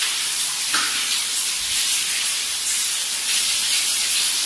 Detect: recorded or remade remade